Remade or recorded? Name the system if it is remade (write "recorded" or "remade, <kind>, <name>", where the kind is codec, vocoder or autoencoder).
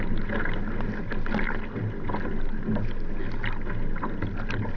recorded